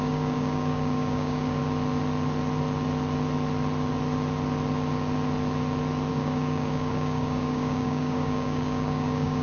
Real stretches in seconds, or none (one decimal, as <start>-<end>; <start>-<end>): 1.6-6.1